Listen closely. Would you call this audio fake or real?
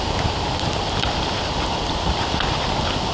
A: fake